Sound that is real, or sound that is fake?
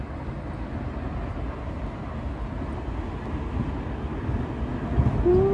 real